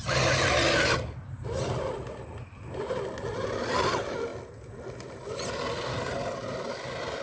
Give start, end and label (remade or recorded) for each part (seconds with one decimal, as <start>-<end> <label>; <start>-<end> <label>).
0.0-7.2 recorded